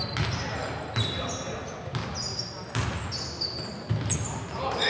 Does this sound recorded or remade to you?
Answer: recorded